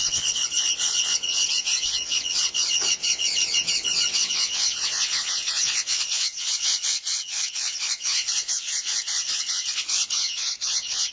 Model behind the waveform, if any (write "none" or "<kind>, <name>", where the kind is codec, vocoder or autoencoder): vocoder, WaveNeXt